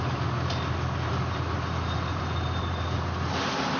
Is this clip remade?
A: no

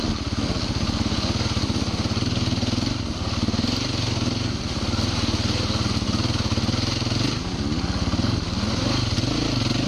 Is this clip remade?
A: no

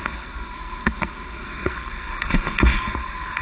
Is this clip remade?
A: yes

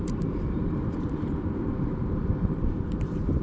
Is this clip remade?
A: yes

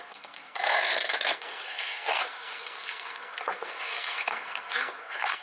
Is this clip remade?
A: yes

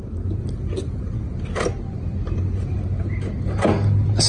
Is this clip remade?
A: no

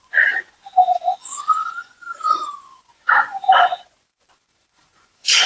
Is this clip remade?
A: yes